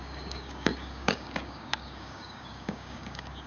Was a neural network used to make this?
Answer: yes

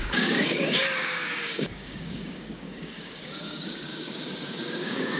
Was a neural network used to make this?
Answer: yes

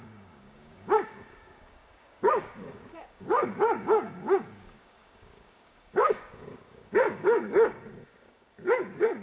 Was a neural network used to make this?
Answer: yes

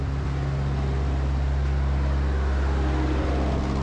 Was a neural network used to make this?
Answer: no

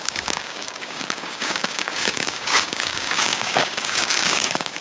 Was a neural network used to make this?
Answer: yes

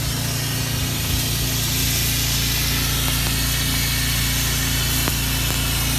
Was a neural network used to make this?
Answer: no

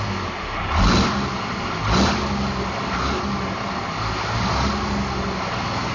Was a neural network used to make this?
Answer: no